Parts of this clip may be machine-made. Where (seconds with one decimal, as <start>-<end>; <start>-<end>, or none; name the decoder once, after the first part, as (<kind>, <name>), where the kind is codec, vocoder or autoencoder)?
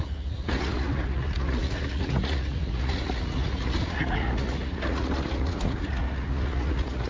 0.0-7.1 (vocoder, Vocos)